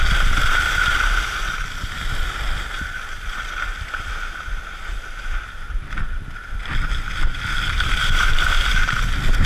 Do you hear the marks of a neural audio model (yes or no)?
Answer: no